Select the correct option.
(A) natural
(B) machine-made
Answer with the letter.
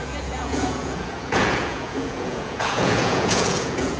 B